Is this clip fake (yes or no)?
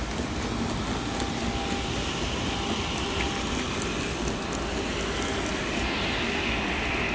no